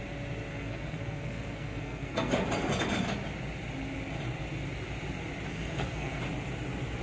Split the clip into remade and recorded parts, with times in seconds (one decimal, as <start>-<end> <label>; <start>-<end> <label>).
0.0-0.5 recorded; 0.5-2.3 remade; 2.3-5.5 recorded; 5.5-6.2 remade; 6.2-7.0 recorded